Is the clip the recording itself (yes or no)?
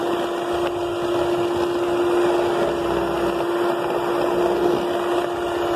yes